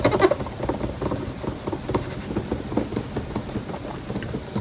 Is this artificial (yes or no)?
no